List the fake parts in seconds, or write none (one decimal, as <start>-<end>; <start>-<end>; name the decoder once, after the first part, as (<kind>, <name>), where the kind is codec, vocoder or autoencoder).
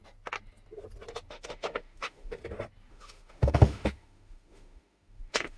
1.3-2.4 (autoencoder, DAC-VAE); 2.9-5.6